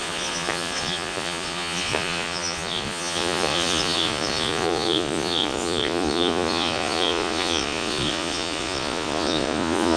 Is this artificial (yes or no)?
yes